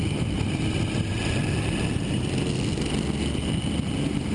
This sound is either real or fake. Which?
real